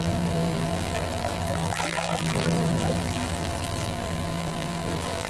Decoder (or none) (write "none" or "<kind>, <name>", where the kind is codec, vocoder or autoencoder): vocoder, BigVGAN v2